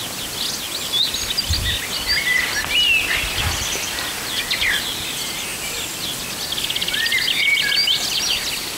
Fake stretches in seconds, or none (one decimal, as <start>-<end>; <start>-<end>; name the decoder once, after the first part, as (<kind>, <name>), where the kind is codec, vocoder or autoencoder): 5.5-6.2 (vocoder, BigVGAN v2)